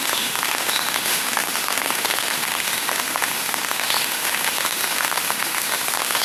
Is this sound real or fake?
fake